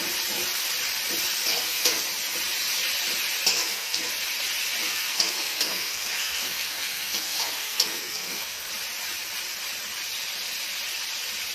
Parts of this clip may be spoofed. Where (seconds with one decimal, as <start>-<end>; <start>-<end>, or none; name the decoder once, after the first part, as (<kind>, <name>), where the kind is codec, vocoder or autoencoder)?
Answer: 1.5-2.0 (codec, SNAC); 3.5-4.1; 4.8-8.7

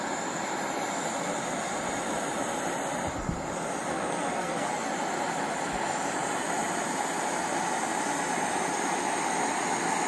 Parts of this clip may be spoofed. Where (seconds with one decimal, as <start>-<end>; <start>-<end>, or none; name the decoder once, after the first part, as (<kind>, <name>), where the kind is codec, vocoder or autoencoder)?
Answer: 3.9-4.7 (codec, SNAC)

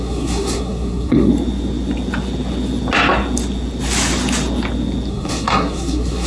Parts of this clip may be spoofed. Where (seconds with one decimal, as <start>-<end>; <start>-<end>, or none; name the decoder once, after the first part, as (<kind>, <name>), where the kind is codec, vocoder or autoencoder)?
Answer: 0.0-1.3 (codec, SNAC); 5.1-6.3